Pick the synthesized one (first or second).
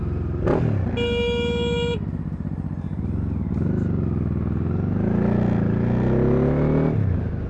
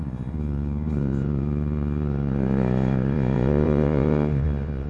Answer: second